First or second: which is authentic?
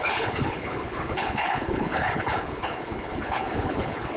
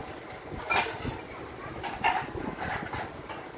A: second